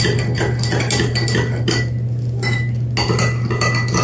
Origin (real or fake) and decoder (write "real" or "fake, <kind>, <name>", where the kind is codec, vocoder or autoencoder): real